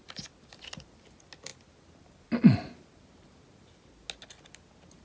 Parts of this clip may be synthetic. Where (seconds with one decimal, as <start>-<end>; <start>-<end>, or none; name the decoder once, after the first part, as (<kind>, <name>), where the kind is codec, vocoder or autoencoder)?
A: none